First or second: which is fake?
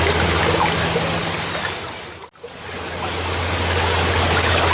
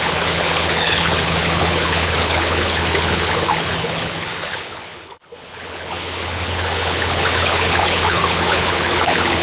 second